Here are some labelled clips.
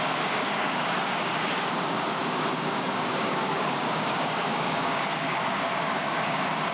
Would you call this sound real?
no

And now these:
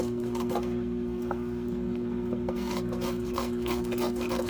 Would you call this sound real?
no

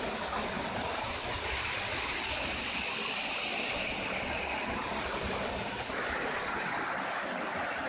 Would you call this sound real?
yes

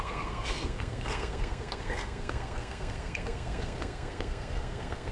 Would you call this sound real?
no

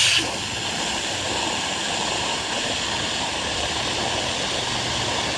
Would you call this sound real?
yes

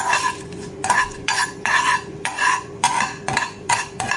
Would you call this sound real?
no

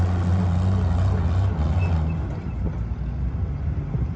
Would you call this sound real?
yes